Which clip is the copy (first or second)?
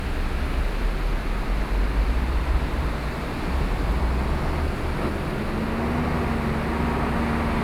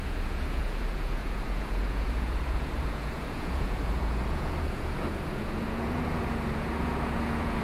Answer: second